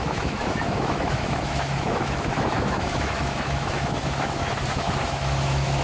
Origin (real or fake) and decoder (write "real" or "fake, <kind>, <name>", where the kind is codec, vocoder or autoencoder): fake, autoencoder, DAC-VAE